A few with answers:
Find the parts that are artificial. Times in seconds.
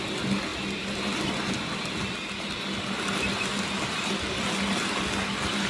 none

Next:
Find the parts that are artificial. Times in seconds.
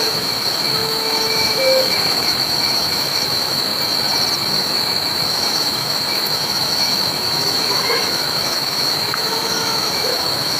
0.0-3.7; 4.5-10.6